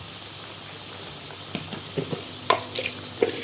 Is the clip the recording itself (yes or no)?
yes